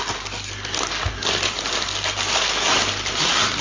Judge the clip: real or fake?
real